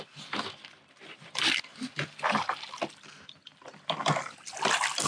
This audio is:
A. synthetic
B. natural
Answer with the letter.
B